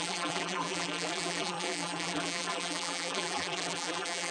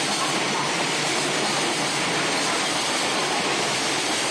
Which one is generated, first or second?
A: first